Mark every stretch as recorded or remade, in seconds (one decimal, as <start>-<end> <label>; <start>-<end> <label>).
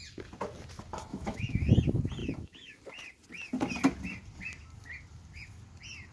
0.0-1.1 recorded; 1.1-1.7 remade; 1.7-2.2 recorded; 2.2-2.8 remade; 2.8-6.1 recorded